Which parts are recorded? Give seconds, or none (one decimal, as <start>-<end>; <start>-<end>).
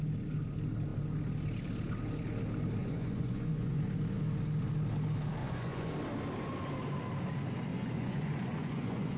0.0-2.8; 3.8-5.4; 5.9-7.7